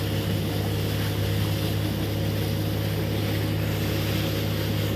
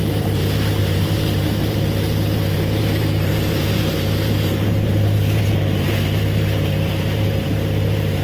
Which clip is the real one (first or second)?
first